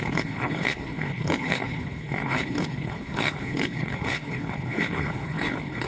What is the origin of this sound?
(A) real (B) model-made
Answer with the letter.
B